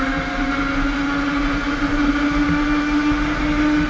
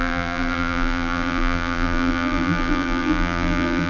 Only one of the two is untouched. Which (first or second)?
first